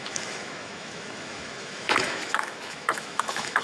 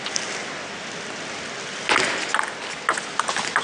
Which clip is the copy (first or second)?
first